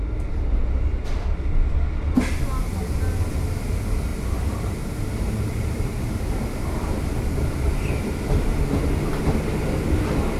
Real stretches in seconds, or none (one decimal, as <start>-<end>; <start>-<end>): 0.0-4.1; 7.8-10.4